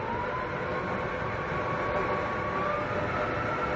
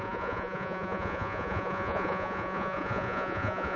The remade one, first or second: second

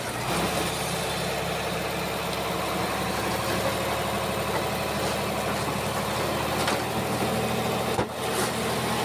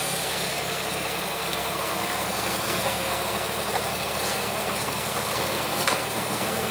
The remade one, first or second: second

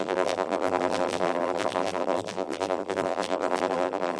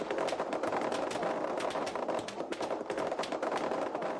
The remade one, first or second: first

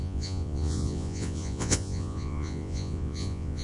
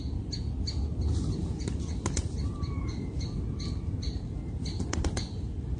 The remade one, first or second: first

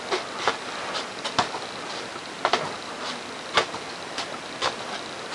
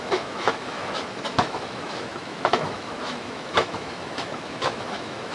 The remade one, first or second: second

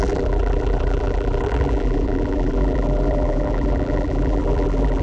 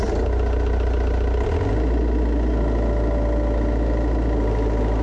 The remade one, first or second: first